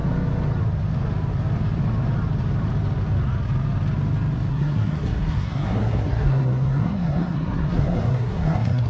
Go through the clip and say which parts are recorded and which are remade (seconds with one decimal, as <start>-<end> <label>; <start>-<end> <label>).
0.0-4.5 recorded; 4.5-8.9 remade

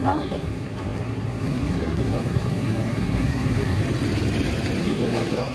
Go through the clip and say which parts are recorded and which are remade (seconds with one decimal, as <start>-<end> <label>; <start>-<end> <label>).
0.0-3.8 remade; 3.8-4.8 recorded; 4.8-5.5 remade